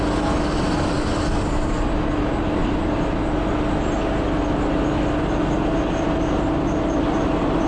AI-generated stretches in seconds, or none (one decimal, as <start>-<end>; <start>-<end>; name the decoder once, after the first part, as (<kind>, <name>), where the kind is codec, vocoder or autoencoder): none